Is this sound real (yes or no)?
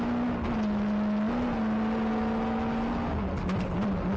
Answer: yes